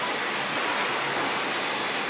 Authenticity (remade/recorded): recorded